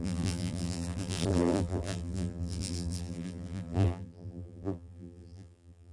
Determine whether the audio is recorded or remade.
remade